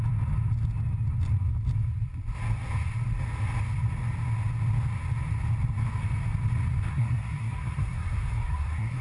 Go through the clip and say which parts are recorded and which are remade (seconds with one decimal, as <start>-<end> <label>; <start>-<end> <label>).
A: 0.0-6.9 recorded; 6.9-9.0 remade